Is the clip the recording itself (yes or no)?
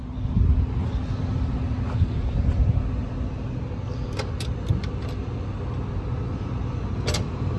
yes